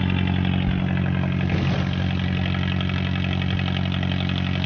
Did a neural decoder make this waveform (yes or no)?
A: no